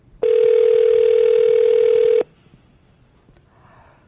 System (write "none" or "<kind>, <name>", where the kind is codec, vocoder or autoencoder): none